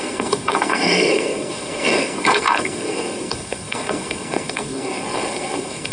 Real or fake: fake